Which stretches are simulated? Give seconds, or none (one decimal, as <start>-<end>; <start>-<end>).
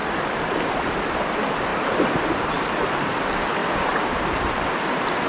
1.7-3.2; 3.6-4.6